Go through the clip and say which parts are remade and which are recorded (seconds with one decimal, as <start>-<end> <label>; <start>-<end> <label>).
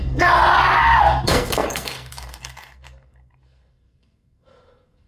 0.0-0.4 remade; 0.4-1.0 recorded; 1.0-5.1 remade